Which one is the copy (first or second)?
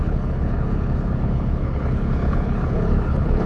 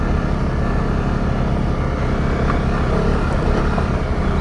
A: first